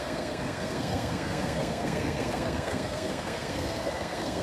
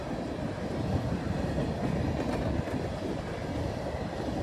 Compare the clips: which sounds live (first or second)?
second